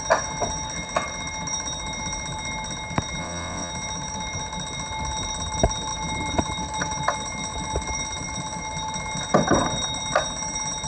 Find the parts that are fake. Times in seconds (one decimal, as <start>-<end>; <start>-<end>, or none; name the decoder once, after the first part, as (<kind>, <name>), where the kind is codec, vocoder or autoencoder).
3.2-3.7 (vocoder, WaveNeXt)